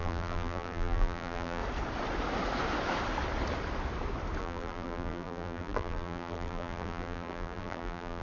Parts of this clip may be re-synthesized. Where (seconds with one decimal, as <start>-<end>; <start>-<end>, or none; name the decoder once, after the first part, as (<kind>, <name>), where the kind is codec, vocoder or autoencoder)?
0.0-1.6 (vocoder, BigVGAN v2); 4.4-8.2